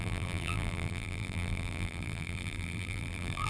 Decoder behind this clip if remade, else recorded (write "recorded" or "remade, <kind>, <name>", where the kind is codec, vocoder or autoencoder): remade, vocoder, BigVGAN v2